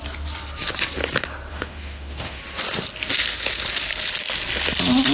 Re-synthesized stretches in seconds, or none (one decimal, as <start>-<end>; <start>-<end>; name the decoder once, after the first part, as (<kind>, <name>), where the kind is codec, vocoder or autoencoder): 1.5-2.4 (autoencoder, DAC-VAE)